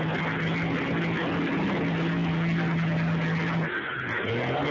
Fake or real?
real